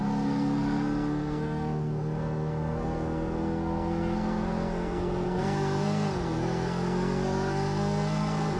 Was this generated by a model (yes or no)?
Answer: yes